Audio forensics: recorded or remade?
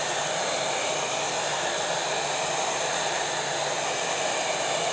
recorded